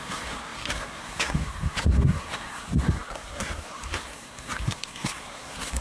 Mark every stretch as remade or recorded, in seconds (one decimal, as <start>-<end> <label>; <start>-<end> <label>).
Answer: 0.0-5.8 remade